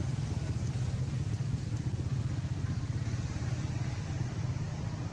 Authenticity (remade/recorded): recorded